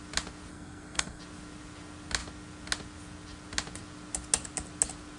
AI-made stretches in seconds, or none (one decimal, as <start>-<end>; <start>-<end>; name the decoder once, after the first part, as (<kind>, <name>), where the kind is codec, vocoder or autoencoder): 0.5-1.2 (codec, SNAC)